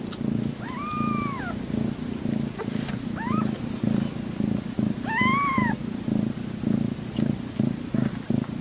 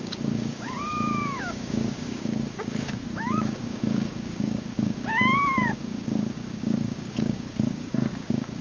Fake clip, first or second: second